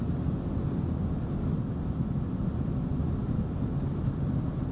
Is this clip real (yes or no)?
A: yes